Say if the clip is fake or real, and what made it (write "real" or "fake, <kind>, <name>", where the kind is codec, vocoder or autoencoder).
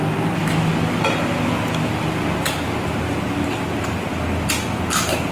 real